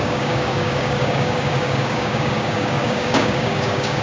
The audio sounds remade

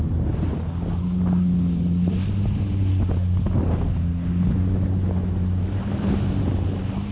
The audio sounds recorded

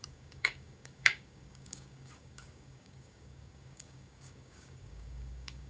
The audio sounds remade